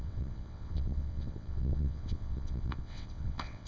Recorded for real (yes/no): no